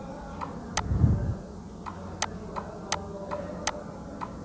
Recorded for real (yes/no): yes